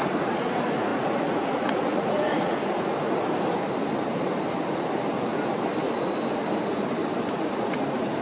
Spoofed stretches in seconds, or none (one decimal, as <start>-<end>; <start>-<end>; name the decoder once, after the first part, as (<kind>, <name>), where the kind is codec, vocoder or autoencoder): 0.0-2.6 (vocoder, Vocos); 7.5-8.2